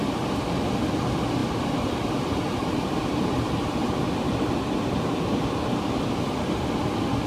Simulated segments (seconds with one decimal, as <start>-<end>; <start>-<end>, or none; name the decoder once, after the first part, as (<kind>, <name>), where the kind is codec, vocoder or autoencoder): 1.4-5.8 (vocoder, BigVGAN v2)